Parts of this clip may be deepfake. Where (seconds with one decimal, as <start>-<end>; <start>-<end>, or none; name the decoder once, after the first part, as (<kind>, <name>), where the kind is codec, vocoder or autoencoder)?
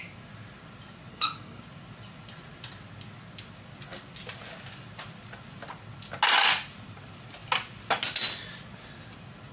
1.1-1.6 (codec, SNAC)